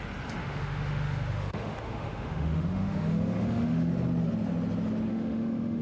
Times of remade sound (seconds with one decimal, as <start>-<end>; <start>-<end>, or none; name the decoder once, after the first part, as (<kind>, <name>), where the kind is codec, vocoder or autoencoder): 0.4-3.9 (autoencoder, DAC-VAE); 5.1-5.8

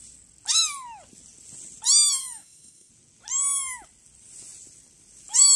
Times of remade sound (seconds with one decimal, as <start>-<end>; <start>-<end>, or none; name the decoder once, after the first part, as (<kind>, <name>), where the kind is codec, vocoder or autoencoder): 2.2-2.9 (autoencoder, DAC-VAE)